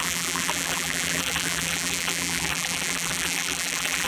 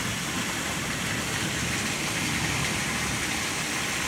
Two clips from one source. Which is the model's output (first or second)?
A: first